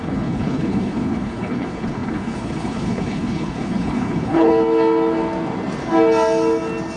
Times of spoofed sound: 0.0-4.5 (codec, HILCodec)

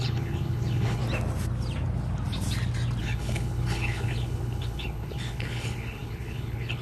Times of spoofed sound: 0.0-1.0 (codec, HILCodec); 3.0-6.8

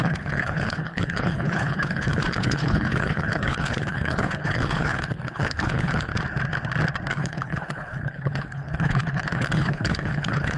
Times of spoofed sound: 0.0-6.1 (codec, HILCodec); 7.1-10.6

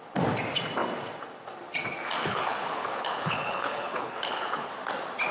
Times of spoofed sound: 2.2-4.7 (codec, HILCodec)

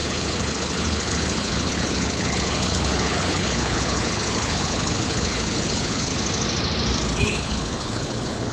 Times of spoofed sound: 0.0-6.1 (codec, HILCodec); 7.2-8.5

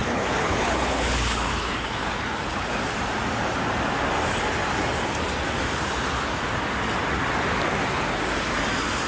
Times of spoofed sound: 0.0-2.7 (codec, HILCodec)

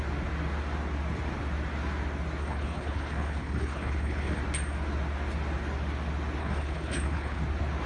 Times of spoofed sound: 2.4-4.4 (codec, HILCodec); 6.4-7.4